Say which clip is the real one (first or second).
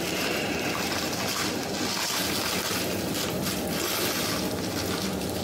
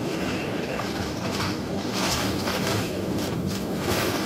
first